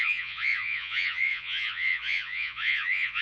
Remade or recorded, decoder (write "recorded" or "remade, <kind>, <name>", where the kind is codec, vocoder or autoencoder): remade, vocoder, Vocos